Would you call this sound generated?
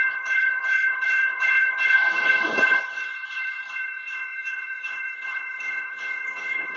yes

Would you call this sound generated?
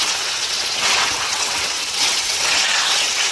yes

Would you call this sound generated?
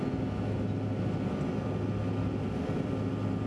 no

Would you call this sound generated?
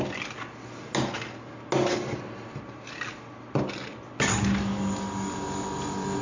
no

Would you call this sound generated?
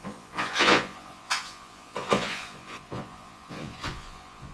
yes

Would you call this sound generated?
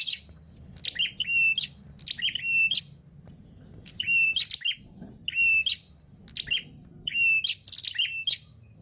no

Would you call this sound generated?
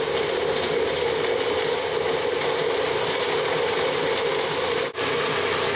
no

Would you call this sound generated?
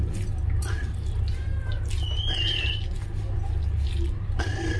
no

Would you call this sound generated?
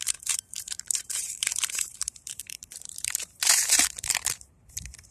yes